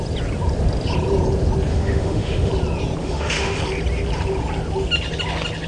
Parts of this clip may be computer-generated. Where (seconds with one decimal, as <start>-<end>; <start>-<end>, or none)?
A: 1.7-2.5; 3.0-3.6